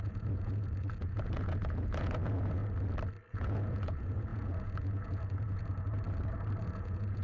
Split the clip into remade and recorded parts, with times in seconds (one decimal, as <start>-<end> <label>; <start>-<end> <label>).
0.0-2.6 remade; 2.6-3.3 recorded; 3.3-5.7 remade; 5.7-6.6 recorded; 6.6-7.2 remade